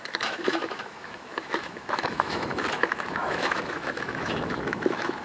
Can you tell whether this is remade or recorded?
remade